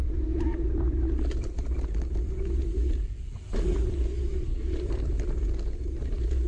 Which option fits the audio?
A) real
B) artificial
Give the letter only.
A